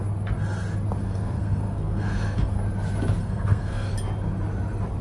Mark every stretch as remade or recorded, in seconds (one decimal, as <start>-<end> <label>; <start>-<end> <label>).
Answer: 0.0-1.0 recorded; 1.0-2.6 remade; 2.6-3.2 recorded; 3.2-3.9 remade; 3.9-5.0 recorded